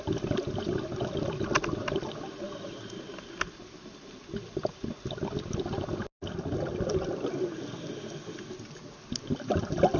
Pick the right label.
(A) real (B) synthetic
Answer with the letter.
A